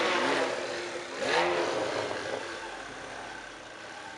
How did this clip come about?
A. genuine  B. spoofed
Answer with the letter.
A